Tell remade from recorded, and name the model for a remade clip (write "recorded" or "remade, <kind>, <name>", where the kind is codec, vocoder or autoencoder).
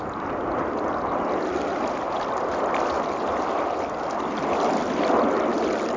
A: recorded